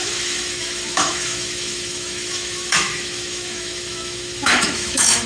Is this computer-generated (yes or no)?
yes